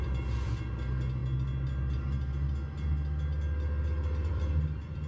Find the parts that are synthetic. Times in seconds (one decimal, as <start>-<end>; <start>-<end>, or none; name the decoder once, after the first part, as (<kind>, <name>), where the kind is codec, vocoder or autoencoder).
0.0-1.2 (vocoder, BigVGAN v2); 4.3-5.1